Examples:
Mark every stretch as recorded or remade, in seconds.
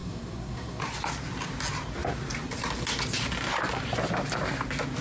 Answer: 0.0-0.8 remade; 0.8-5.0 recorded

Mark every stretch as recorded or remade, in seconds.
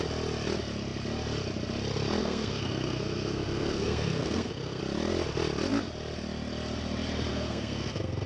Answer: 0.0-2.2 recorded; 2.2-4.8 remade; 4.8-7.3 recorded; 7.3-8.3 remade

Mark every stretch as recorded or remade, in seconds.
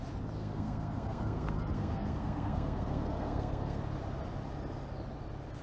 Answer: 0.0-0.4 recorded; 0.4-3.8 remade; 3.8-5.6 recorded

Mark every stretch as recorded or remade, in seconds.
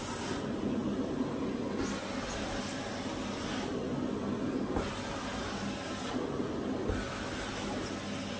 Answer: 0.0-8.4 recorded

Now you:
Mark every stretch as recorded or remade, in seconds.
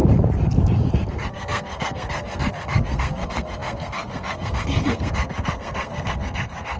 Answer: 0.0-1.1 recorded; 1.1-6.8 remade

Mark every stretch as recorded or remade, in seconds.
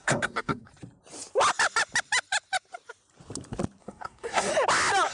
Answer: 0.0-0.7 remade; 0.7-3.8 recorded; 3.8-4.5 remade; 4.5-5.1 recorded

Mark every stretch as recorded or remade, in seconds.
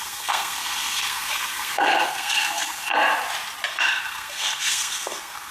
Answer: 0.0-2.9 remade; 2.9-3.7 recorded; 3.7-5.5 remade